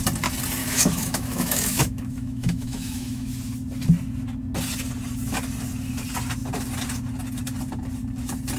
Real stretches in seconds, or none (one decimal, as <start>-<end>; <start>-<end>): 0.0-0.6; 3.3-8.6

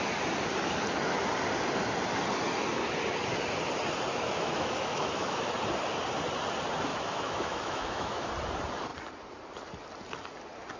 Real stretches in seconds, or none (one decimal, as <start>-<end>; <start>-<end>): 0.0-4.1; 5.5-6.9; 8.3-10.8

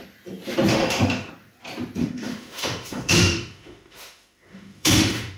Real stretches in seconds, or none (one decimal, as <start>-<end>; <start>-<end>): 0.0-0.7; 1.3-2.0

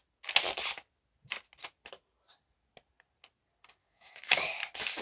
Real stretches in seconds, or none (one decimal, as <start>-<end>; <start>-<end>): 0.0-3.8; 4.4-5.0

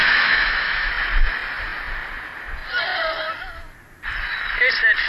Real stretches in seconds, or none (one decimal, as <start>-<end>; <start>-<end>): 0.9-5.1

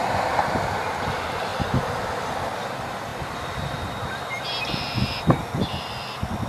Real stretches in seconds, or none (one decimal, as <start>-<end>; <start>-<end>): 0.0-6.5

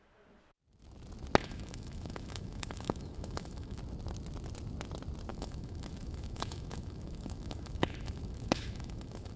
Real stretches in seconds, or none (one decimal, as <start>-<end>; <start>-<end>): 0.0-1.4; 3.8-5.3

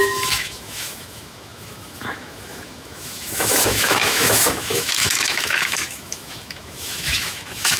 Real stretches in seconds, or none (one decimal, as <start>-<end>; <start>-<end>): none